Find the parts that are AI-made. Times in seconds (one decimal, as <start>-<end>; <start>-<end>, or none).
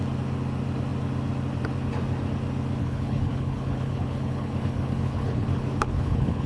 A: 2.8-6.5